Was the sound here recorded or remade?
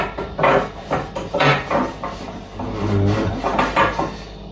remade